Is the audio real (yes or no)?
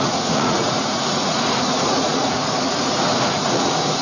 no